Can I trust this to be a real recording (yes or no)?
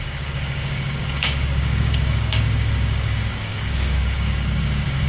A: no